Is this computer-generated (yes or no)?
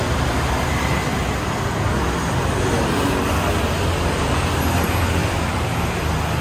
no